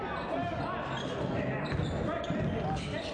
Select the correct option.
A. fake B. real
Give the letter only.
B